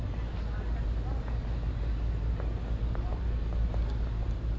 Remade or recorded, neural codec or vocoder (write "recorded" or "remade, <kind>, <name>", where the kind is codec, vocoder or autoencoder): recorded